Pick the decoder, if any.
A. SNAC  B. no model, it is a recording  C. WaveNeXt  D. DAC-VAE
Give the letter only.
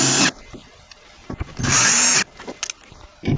B